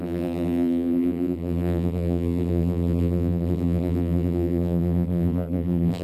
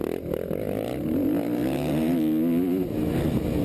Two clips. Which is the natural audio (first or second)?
second